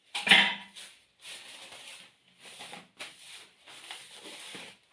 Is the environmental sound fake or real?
real